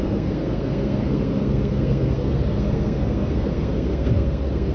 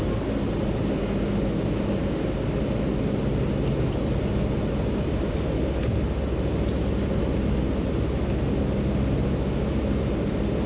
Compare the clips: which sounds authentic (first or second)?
second